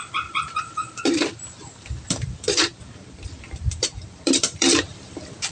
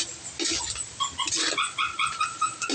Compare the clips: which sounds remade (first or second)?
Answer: first